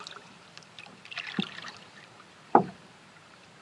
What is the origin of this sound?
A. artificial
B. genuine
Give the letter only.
A